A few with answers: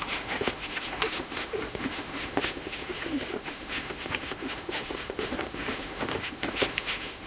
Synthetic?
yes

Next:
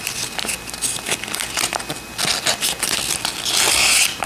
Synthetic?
no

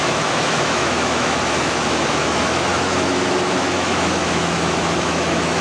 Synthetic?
yes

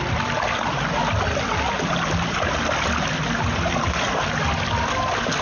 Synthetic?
no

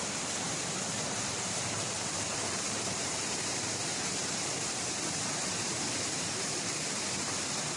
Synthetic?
yes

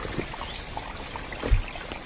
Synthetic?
no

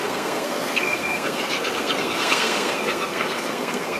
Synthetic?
yes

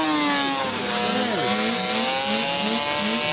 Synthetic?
no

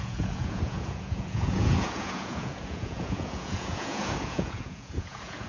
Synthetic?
yes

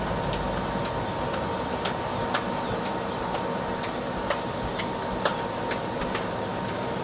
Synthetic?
no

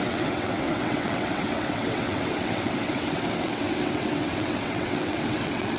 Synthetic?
yes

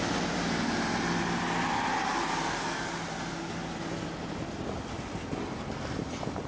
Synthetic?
no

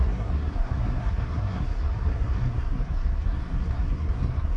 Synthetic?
yes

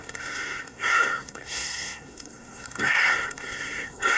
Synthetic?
yes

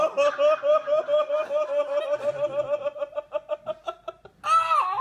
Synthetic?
no